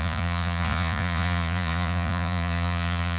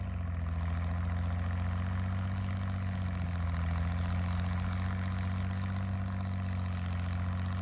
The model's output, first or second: first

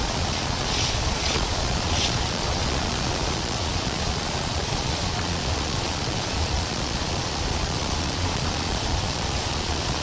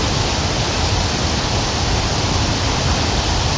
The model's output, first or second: first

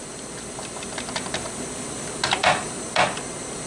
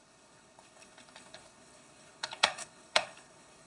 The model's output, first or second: second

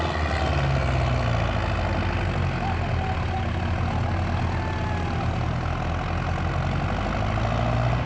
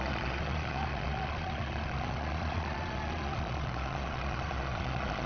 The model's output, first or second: second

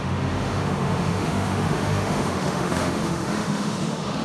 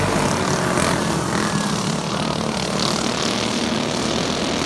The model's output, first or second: first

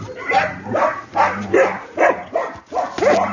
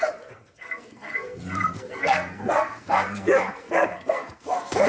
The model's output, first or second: second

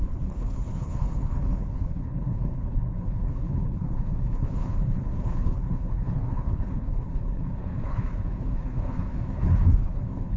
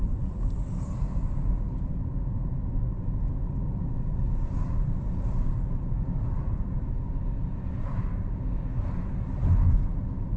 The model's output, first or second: first